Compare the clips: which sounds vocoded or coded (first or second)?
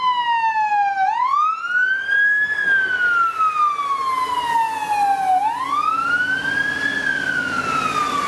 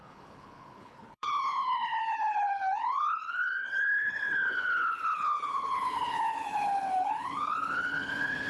second